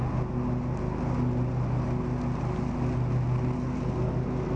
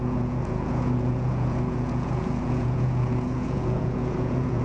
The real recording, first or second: first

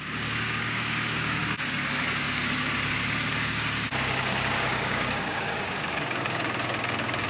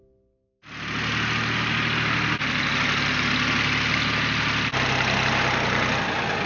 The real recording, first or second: second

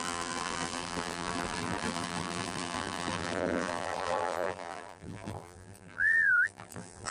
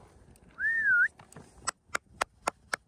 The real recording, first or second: second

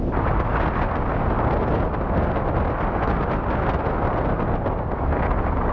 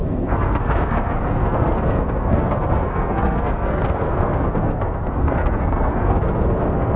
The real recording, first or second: first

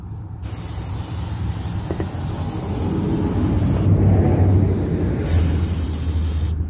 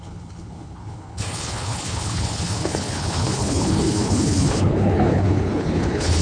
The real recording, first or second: first